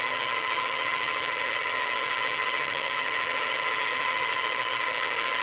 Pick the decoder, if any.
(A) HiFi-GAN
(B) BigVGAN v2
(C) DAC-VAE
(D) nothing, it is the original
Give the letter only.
A